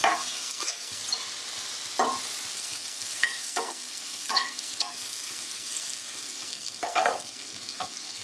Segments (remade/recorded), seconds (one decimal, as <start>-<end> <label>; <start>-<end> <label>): 0.0-1.0 remade; 1.0-2.5 recorded; 2.5-8.2 remade